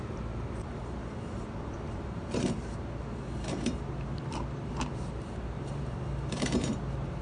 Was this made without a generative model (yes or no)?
no